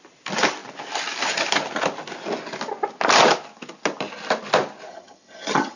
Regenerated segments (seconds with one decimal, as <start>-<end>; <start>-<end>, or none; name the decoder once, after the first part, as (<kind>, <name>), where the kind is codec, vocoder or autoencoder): 4.9-5.8 (vocoder, HiFi-GAN)